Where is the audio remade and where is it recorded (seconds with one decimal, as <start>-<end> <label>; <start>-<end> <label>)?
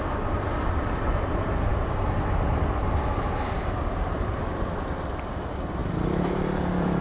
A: 0.0-3.1 recorded; 3.1-4.8 remade; 4.8-5.8 recorded; 5.8-7.0 remade